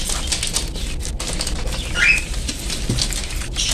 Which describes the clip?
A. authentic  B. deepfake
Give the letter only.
A